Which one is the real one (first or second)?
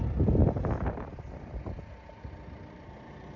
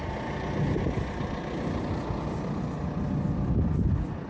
second